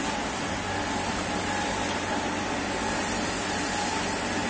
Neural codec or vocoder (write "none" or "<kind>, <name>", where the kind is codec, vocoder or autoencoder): none